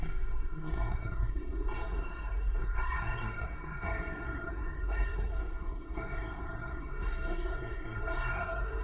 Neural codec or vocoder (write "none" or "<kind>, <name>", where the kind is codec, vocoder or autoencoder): codec, SNAC